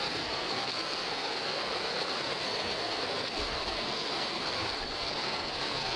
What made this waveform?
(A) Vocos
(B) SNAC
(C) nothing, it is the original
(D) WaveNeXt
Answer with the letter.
B